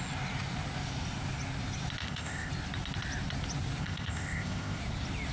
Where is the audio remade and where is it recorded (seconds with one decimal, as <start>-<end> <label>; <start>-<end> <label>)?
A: 0.0-2.0 recorded; 2.0-2.5 remade; 2.5-3.8 recorded; 3.8-4.8 remade; 4.8-5.3 recorded